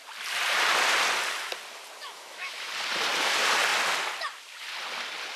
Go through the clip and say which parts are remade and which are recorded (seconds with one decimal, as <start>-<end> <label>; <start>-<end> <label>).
0.0-2.0 recorded; 2.0-2.7 remade; 2.7-5.4 recorded